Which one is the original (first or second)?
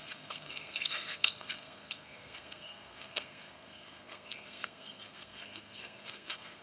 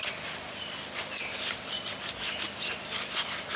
second